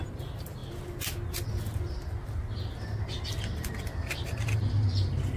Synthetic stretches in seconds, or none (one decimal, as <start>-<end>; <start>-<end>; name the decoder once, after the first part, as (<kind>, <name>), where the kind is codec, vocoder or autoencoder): none